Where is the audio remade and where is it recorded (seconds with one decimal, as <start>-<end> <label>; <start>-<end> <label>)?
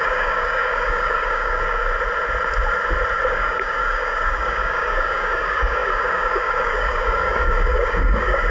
0.0-1.8 remade; 1.8-3.2 recorded; 3.2-8.5 remade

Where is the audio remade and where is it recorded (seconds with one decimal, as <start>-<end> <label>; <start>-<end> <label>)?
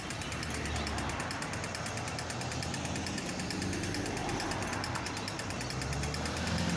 0.0-6.8 recorded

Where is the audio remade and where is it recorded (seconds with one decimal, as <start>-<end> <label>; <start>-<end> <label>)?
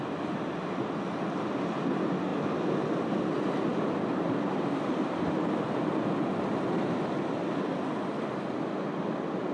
0.0-9.5 recorded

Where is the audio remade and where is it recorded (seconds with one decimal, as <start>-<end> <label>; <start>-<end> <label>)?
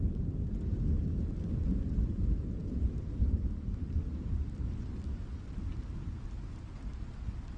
0.0-7.6 recorded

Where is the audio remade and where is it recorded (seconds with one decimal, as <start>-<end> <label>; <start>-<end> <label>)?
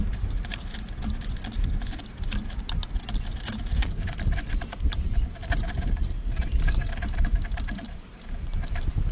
0.0-0.5 remade; 0.5-4.7 recorded; 4.7-9.1 remade